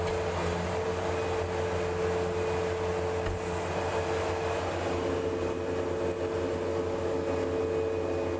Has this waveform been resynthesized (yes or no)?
no